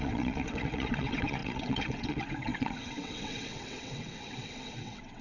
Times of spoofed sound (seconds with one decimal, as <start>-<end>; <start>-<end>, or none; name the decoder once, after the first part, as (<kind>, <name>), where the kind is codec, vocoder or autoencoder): 0.0-5.2 (vocoder, WaveNeXt)